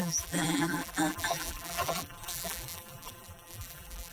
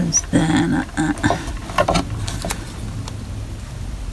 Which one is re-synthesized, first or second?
first